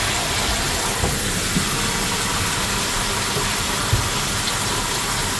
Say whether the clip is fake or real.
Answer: real